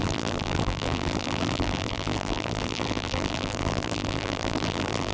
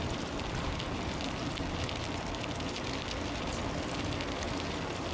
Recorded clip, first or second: second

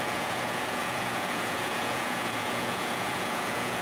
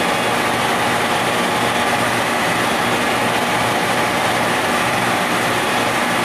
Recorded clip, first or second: second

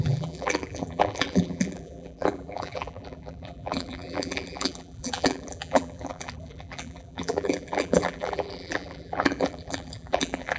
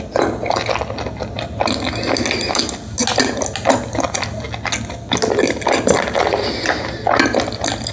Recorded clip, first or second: second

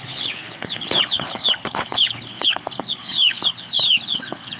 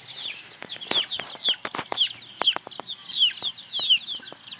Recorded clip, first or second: second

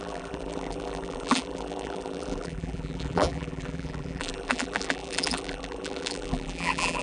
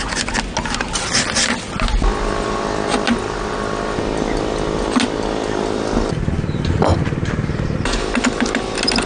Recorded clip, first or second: second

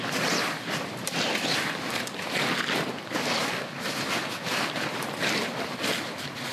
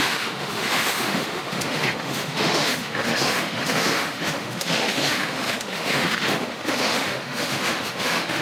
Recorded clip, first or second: first